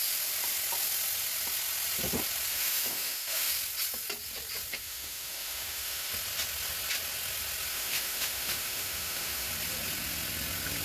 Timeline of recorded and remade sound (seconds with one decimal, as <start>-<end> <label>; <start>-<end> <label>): 0.0-2.5 recorded; 2.5-3.5 remade; 3.5-4.7 recorded; 4.7-6.1 remade; 6.1-7.7 recorded; 7.7-9.5 remade; 9.5-10.8 recorded